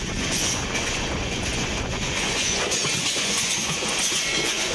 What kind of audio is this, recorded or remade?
remade